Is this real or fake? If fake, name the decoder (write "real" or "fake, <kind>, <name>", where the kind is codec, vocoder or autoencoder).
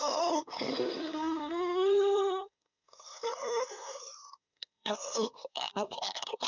fake, codec, SNAC